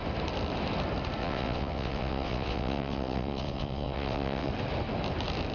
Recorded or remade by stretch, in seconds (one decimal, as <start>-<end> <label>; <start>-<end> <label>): 0.0-1.2 recorded; 1.2-4.5 remade; 4.5-5.5 recorded